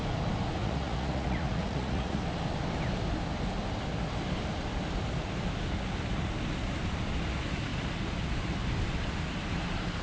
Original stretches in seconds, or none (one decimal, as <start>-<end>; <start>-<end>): 0.0-0.6; 2.2-10.0